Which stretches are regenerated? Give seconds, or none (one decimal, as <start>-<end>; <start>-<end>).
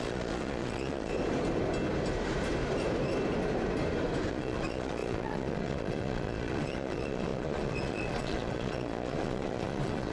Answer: 0.0-1.1; 4.3-10.1